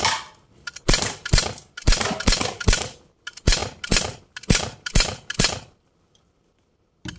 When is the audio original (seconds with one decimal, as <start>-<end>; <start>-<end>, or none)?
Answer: 0.0-7.2